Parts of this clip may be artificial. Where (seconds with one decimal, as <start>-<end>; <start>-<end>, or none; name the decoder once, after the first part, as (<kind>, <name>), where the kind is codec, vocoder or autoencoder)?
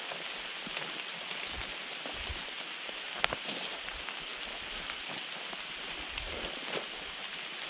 none